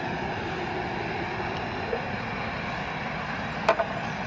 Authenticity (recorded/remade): recorded